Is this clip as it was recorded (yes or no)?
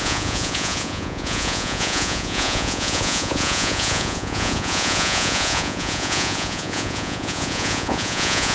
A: no